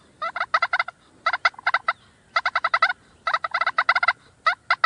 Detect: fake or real real